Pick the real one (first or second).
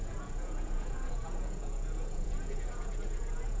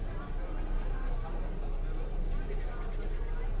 second